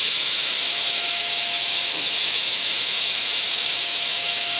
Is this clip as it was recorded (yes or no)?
no